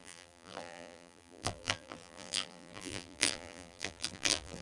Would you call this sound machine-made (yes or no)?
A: yes